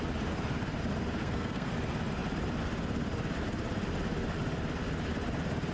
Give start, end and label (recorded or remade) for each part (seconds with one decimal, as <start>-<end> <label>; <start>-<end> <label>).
0.0-1.2 recorded; 1.2-1.7 remade; 1.7-5.7 recorded